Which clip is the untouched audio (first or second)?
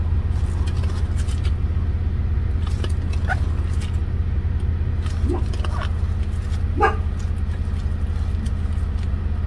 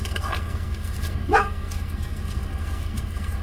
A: first